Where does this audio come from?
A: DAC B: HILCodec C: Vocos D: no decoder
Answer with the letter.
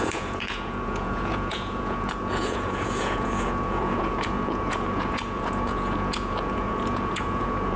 C